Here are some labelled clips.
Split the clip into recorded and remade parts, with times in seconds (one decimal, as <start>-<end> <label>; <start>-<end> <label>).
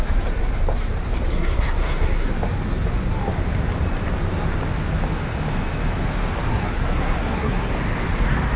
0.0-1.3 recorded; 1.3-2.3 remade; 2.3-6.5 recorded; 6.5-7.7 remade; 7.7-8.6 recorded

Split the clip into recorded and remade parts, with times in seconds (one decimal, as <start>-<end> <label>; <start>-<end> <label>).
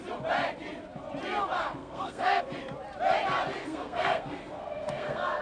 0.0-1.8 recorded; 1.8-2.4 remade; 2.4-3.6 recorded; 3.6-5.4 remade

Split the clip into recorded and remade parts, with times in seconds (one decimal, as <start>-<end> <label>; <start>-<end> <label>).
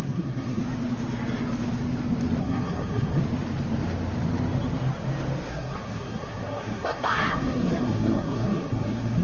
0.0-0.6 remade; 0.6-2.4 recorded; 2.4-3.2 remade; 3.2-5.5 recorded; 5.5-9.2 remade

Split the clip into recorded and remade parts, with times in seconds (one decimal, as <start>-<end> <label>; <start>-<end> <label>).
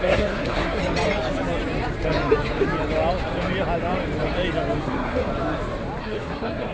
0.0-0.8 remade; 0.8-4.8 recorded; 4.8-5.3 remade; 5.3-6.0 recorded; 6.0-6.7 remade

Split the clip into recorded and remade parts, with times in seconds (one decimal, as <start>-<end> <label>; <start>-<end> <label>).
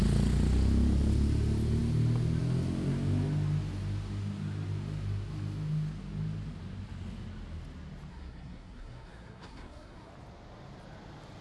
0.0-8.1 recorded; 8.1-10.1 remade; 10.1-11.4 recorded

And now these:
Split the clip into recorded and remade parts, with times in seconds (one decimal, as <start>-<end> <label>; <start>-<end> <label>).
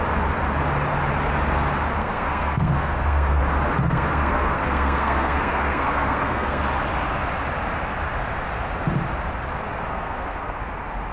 0.0-2.0 recorded; 2.0-3.4 remade; 3.4-3.8 recorded; 3.8-6.6 remade; 6.6-9.9 recorded; 9.9-10.6 remade; 10.6-11.1 recorded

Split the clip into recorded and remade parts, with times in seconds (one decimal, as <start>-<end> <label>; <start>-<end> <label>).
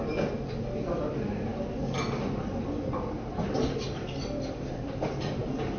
0.0-5.8 recorded